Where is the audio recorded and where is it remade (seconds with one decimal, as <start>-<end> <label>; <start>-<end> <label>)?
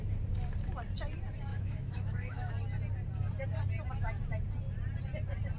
0.0-1.5 recorded; 1.5-2.5 remade; 2.5-5.6 recorded